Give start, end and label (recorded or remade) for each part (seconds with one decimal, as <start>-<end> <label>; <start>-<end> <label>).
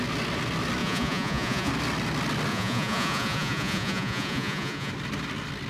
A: 0.0-0.8 recorded; 0.8-1.7 remade; 1.7-2.5 recorded; 2.5-4.9 remade; 4.9-5.7 recorded